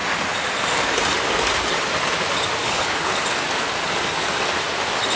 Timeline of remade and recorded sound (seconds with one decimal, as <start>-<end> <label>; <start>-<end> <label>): 0.0-2.6 recorded; 2.6-3.1 remade; 3.1-5.2 recorded